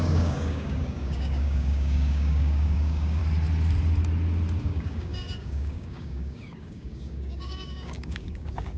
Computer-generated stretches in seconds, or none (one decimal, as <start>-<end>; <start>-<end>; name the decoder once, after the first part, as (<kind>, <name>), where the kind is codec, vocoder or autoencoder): 0.0-3.2 (codec, DAC); 4.6-8.8